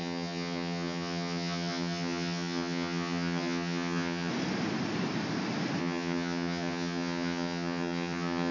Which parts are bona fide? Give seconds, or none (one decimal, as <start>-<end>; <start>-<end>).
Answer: 4.3-5.8